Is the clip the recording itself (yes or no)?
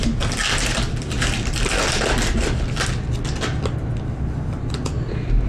yes